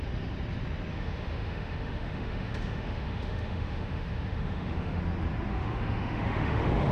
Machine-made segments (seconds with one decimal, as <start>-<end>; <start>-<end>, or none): 0.9-5.0; 5.5-6.9